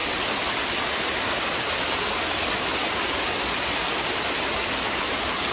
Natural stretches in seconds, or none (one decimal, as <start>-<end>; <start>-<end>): 0.0-5.5